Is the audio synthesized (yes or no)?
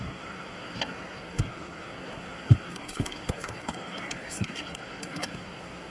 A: yes